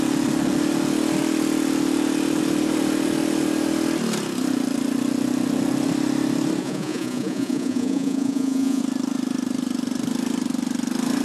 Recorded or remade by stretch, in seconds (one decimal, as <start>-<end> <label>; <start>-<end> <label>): 0.0-6.6 recorded; 6.6-8.8 remade; 8.8-11.2 recorded